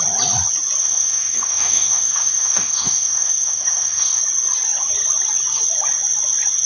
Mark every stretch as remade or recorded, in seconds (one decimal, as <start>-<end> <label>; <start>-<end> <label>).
0.0-0.8 recorded; 0.8-4.2 remade; 4.2-6.7 recorded